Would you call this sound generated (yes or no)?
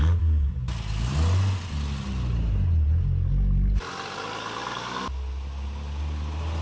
no